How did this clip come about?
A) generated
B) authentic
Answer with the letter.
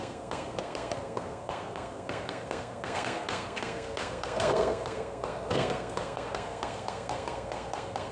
A